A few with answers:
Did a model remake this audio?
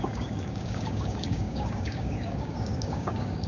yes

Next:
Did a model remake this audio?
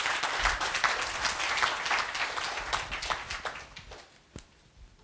no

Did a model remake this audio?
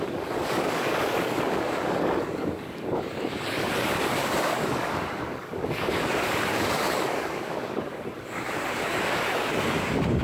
yes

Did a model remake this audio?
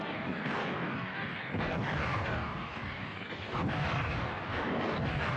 yes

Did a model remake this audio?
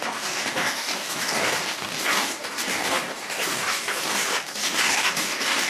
yes